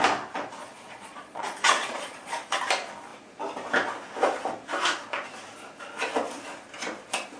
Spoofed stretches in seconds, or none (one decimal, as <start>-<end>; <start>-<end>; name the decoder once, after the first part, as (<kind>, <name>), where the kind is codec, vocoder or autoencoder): 0.6-2.6 (vocoder, Vocos)